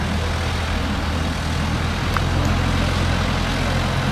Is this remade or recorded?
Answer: recorded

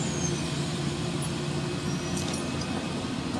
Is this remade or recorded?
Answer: recorded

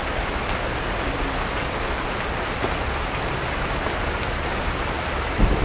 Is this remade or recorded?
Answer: recorded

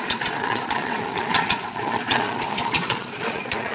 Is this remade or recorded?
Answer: remade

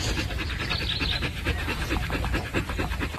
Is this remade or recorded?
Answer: recorded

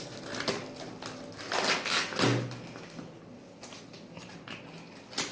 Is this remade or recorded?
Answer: recorded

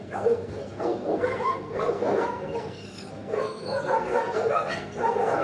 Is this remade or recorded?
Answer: remade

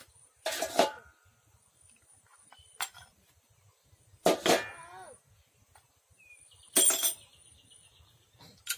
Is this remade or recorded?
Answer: recorded